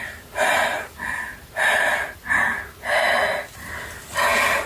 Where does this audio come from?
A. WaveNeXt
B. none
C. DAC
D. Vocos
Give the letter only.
B